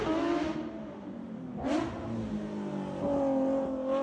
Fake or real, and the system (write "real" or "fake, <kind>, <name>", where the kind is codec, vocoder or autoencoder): real